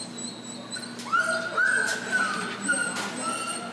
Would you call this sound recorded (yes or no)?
yes